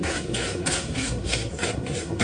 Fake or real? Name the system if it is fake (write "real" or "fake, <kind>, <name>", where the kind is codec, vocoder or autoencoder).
fake, codec, SNAC